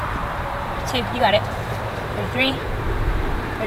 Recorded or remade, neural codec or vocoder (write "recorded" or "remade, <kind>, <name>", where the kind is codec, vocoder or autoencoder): remade, vocoder, BigVGAN v2